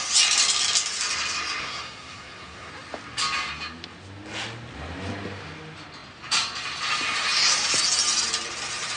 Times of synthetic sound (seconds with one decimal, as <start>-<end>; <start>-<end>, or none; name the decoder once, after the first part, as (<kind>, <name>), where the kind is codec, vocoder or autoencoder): 1.6-2.7 (codec, SNAC)